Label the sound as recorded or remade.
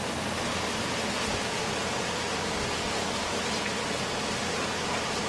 recorded